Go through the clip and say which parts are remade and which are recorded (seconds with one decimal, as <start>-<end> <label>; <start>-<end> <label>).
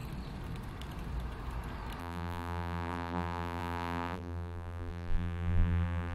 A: 0.0-2.0 recorded; 2.0-6.1 remade